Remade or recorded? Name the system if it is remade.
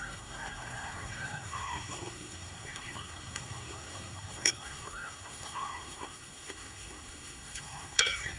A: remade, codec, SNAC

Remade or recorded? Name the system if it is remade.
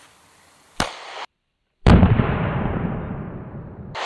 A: remade, vocoder, BigVGAN v2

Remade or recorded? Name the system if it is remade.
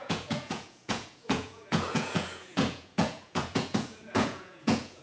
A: remade, vocoder, Vocos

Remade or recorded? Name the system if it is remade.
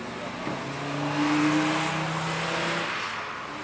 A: recorded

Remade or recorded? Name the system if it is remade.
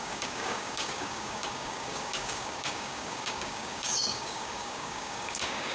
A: remade, codec, DAC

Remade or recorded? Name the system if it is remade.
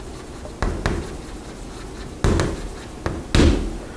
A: recorded